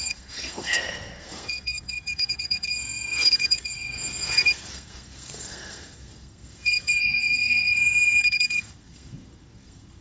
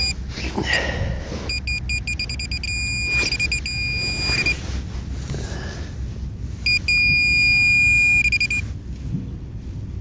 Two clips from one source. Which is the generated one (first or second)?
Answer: first